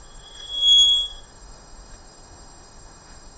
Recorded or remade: remade